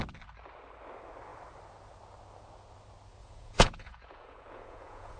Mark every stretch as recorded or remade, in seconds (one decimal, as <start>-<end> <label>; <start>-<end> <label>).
0.0-3.2 recorded; 3.2-5.2 remade